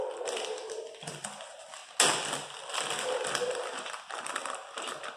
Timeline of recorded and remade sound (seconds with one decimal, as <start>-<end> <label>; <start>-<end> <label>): 0.0-5.2 recorded